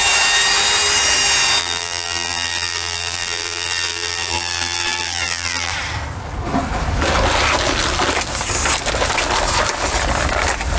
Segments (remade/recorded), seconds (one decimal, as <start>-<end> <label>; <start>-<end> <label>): 0.0-1.6 recorded; 1.6-5.7 remade; 5.7-10.8 recorded